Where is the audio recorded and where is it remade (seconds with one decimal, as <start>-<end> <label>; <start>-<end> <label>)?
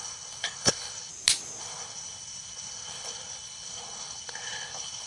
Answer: 0.0-1.1 remade; 1.1-1.6 recorded; 1.6-5.1 remade